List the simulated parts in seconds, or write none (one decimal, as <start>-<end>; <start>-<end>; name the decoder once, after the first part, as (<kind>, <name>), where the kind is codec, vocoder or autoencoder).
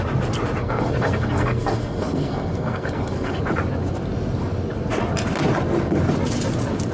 0.6-3.4 (codec, SNAC)